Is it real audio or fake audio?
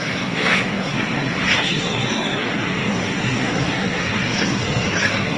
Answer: fake